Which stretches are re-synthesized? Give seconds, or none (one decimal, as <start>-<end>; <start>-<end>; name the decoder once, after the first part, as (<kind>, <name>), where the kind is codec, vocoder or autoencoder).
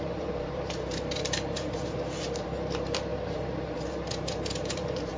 0.0-5.2 (vocoder, BigVGAN v2)